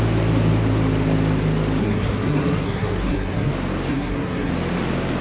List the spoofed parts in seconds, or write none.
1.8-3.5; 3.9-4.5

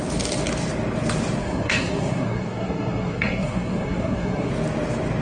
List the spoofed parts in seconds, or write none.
1.4-4.5

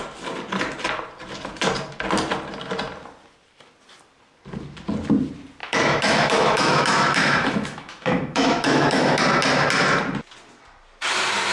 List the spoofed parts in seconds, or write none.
5.6-9.2

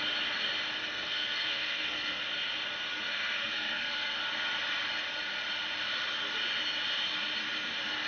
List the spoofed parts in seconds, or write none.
0.8-2.2; 3.1-4.2

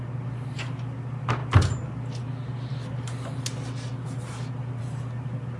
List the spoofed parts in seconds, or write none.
none

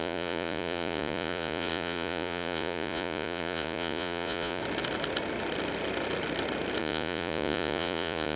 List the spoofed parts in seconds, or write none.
0.0-4.6; 6.8-8.4